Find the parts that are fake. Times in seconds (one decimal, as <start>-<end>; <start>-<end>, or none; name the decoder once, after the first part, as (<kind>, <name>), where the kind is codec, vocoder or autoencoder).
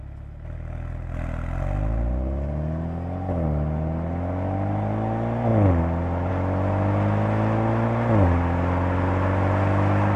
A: none